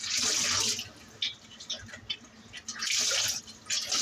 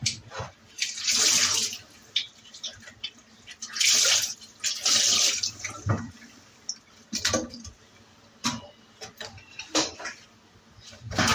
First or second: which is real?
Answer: first